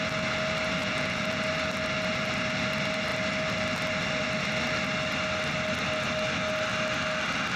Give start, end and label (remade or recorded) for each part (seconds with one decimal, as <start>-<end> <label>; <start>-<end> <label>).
0.0-0.8 recorded; 0.8-1.4 remade; 1.4-7.6 recorded